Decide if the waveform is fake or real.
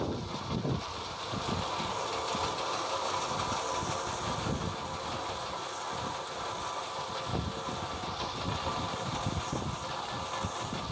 real